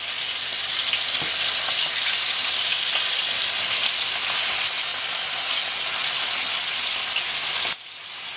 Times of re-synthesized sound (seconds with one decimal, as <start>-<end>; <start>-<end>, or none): none